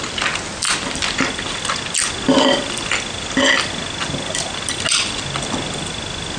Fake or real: real